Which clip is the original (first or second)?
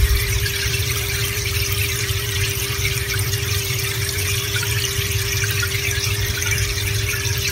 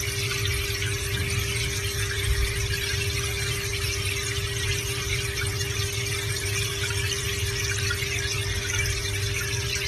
second